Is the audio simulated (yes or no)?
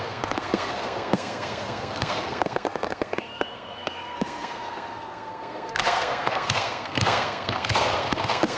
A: yes